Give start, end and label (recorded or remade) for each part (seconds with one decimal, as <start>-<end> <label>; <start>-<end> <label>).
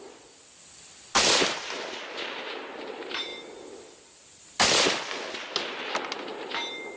0.0-7.0 recorded